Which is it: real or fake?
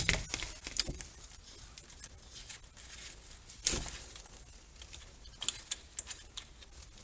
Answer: real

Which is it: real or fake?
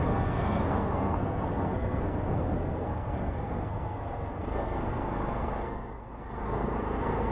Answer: fake